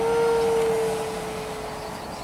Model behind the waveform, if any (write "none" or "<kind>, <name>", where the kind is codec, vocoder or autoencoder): none